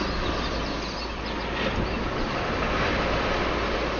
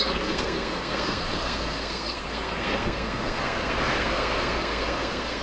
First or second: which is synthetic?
second